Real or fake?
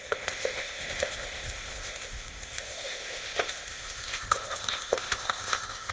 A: fake